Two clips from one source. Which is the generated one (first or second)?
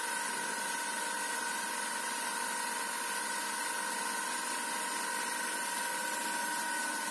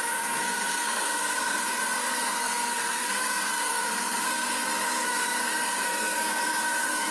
second